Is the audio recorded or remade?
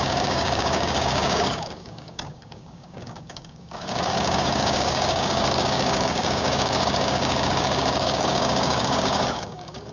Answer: remade